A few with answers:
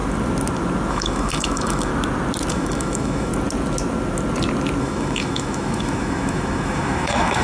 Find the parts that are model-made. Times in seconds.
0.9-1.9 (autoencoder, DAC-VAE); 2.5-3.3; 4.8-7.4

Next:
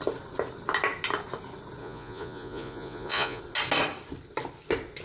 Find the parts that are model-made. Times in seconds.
1.8-3.4 (vocoder, Vocos)

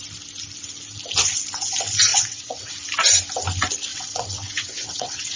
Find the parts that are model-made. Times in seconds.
2.1-2.7 (vocoder, WaveNeXt); 3.9-5.4

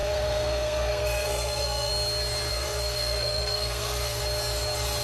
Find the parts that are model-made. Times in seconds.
0.0-1.9 (codec, SNAC); 2.5-4.2

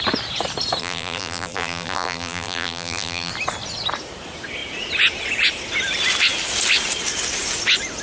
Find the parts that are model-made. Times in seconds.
0.8-3.3 (vocoder, BigVGAN v2)

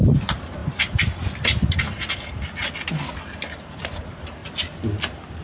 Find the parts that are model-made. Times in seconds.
none

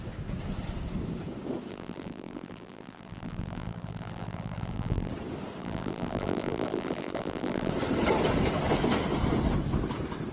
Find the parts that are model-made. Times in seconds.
1.7-5.1 (vocoder, BigVGAN v2); 5.6-7.7